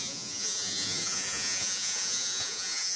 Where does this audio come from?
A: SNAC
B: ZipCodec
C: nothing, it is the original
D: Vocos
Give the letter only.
D